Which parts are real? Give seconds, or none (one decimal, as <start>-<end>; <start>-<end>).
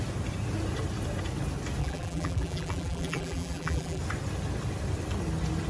0.0-1.8; 4.0-5.7